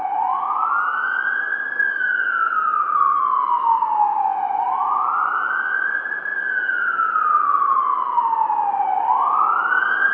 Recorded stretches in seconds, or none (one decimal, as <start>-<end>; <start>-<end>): 0.0-10.1